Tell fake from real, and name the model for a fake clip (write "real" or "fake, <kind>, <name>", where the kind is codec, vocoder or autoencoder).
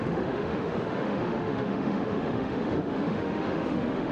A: fake, autoencoder, DAC-VAE